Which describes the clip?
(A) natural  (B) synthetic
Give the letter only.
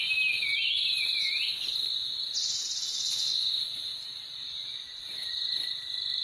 A